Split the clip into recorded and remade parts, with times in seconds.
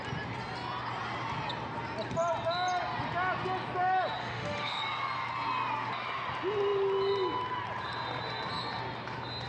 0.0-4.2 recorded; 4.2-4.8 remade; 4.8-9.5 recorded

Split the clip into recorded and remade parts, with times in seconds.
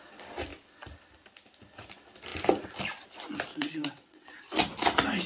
0.0-3.5 recorded; 3.5-4.4 remade; 4.4-5.3 recorded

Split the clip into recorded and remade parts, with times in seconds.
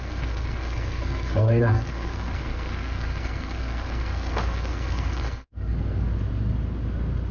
0.0-6.1 remade; 6.1-7.3 recorded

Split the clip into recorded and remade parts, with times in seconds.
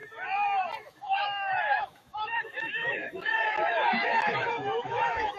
0.0-0.8 recorded; 0.8-5.4 remade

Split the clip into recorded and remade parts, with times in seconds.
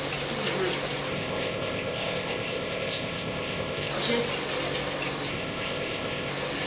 0.0-1.1 recorded; 1.1-3.9 remade; 3.9-5.3 recorded; 5.3-6.3 remade; 6.3-6.7 recorded